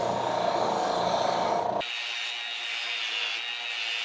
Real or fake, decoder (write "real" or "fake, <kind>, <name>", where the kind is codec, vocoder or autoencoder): real